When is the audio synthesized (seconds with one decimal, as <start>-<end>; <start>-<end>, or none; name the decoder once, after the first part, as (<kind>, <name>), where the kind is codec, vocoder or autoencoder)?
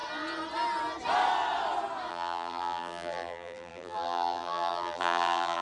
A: 2.1-5.6 (vocoder, BigVGAN v2)